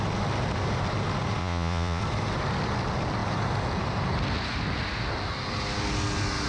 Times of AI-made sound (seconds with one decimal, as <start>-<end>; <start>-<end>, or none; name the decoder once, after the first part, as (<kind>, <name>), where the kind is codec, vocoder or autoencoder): 1.4-2.0 (vocoder, Vocos)